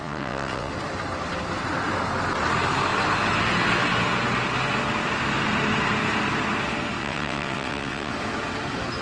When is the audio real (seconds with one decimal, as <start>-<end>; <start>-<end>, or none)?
0.7-7.0; 8.1-9.0